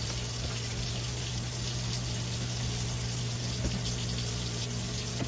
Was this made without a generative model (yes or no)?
yes